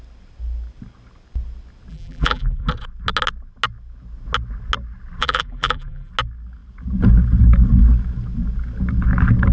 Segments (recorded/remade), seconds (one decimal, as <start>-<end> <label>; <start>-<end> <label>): 0.0-1.9 recorded; 1.9-2.7 remade; 2.7-5.2 recorded; 5.2-6.1 remade; 6.1-9.5 recorded